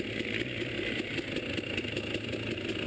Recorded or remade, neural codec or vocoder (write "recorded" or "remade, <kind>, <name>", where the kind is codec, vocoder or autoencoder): recorded